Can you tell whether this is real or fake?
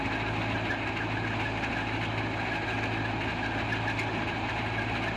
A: real